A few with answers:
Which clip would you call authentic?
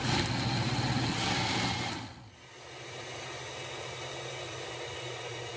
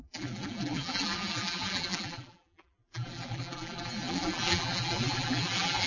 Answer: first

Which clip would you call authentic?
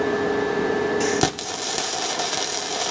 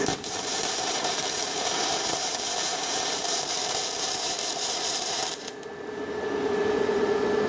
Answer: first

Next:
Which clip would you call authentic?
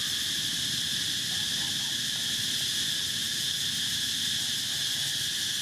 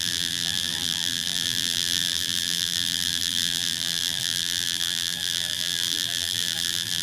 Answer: first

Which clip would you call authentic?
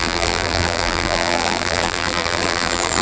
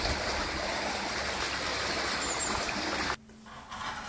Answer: second